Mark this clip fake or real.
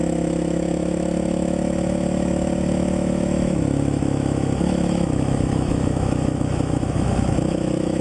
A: fake